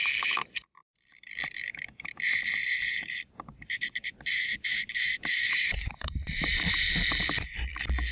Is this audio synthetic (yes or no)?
yes